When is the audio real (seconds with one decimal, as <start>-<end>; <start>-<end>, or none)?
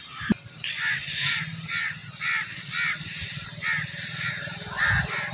0.0-5.3